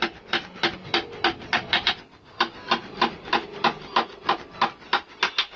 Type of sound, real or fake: real